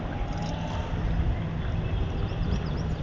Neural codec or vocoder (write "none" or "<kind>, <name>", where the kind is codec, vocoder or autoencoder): none